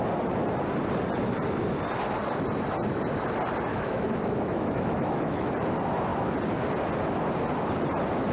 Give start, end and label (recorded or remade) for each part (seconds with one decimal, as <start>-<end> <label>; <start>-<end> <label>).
0.0-3.7 recorded; 3.7-5.5 remade; 5.5-8.3 recorded